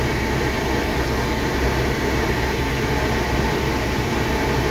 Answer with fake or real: real